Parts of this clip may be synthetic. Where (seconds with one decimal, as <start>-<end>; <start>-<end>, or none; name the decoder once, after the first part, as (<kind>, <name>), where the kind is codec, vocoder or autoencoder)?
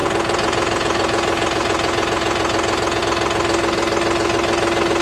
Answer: 0.0-3.0 (vocoder, Vocos)